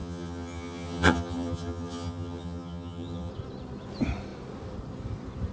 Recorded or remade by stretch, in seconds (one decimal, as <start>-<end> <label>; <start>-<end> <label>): 0.0-3.3 remade; 3.3-5.5 recorded